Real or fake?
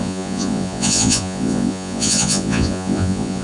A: fake